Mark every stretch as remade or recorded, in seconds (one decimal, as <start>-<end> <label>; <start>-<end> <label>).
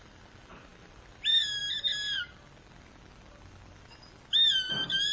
0.0-5.1 recorded